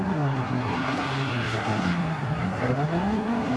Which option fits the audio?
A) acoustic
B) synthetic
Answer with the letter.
B